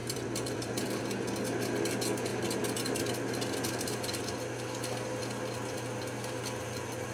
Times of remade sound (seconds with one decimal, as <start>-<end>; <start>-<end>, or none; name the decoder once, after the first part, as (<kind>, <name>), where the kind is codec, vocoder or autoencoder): 0.0-1.0 (vocoder, BigVGAN v2)